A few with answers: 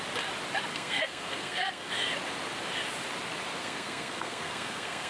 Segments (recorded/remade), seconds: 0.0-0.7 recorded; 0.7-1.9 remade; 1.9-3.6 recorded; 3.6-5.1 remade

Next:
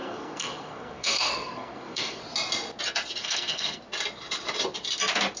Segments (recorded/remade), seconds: 0.0-2.2 remade; 2.2-3.2 recorded; 3.2-3.8 remade; 3.8-5.4 recorded

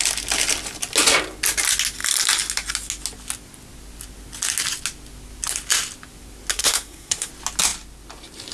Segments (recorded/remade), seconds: 0.0-6.5 recorded; 6.5-7.3 remade; 7.3-8.5 recorded

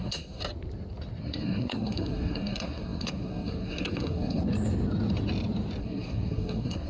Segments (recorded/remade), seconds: 0.0-0.4 remade; 0.4-1.2 recorded; 1.2-4.4 remade; 4.4-5.8 recorded; 5.8-6.9 remade

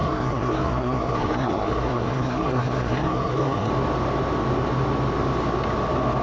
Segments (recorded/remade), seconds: 0.0-3.7 remade; 3.7-6.2 recorded

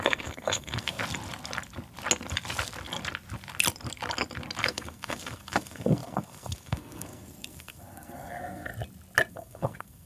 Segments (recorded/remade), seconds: 0.0-1.0 remade; 1.0-4.6 recorded; 4.6-8.7 remade; 8.7-9.3 recorded; 9.3-10.1 remade